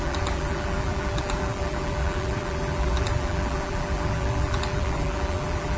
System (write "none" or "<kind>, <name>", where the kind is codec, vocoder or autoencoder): vocoder, BigVGAN v2